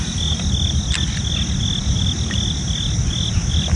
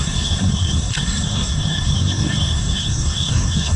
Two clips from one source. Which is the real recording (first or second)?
first